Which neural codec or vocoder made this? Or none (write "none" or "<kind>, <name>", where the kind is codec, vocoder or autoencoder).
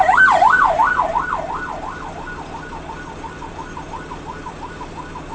none